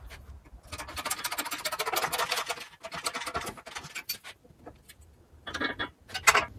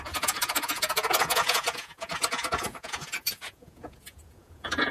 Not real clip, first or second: second